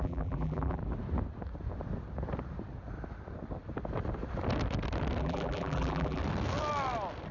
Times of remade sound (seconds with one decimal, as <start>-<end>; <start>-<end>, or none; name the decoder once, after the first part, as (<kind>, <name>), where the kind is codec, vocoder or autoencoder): 0.0-0.8 (vocoder, BigVGAN v2); 5.2-6.2